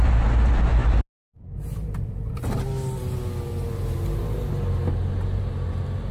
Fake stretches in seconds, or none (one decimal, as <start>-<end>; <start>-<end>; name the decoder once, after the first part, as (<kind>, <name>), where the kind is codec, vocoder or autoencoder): none